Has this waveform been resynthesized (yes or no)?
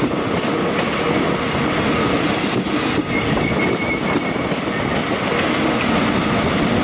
no